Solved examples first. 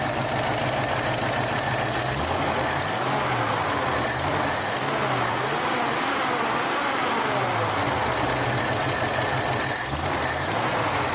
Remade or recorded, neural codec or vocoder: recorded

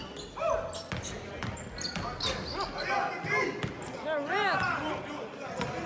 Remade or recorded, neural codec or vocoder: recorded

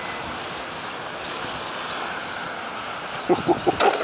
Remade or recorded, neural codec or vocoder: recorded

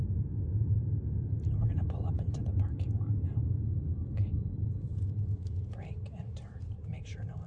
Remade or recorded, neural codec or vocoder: remade, vocoder, BigVGAN v2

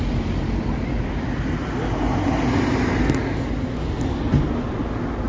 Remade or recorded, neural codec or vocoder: recorded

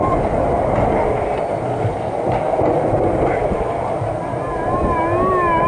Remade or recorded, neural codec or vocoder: recorded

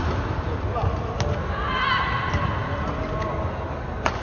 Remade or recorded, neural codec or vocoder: recorded